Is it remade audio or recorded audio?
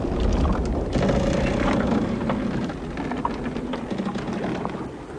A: recorded